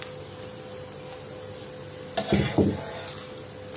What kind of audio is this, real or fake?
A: real